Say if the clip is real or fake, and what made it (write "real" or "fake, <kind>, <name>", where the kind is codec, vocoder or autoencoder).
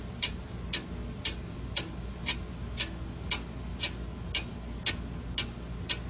real